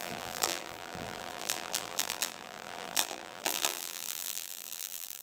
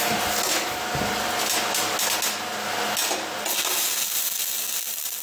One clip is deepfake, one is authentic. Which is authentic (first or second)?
second